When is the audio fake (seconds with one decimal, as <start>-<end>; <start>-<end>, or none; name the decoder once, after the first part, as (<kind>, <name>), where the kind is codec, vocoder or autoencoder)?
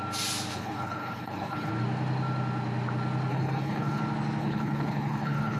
0.5-1.7 (codec, HILCodec); 3.3-4.0; 4.4-5.6